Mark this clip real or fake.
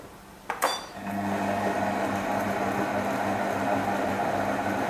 fake